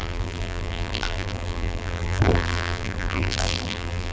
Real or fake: fake